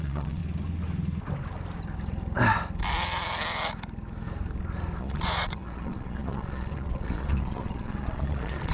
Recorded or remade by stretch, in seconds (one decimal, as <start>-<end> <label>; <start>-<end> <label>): 0.0-0.4 remade; 0.4-5.0 recorded; 5.0-8.7 remade